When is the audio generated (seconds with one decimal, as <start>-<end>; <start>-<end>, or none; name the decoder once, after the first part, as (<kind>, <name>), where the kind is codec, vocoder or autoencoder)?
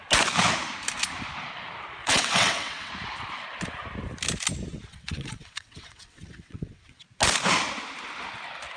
2.0-2.9 (vocoder, WaveNeXt); 4.9-7.0